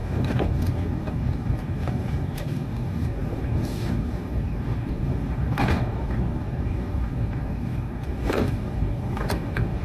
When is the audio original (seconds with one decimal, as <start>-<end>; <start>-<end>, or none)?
none